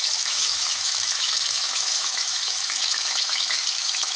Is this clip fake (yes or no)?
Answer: yes